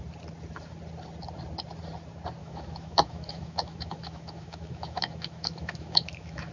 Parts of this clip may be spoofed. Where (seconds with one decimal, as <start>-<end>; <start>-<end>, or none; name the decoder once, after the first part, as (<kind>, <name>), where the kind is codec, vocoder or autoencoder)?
2.4-6.5 (autoencoder, DAC-VAE)